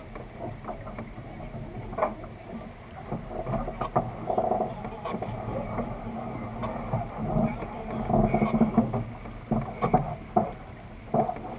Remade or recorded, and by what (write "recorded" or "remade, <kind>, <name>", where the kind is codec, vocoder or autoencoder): recorded